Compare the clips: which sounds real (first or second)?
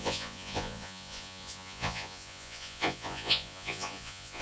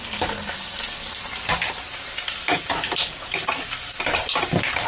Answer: second